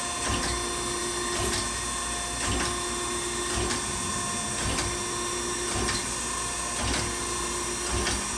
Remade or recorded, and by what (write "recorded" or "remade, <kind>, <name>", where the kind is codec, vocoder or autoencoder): recorded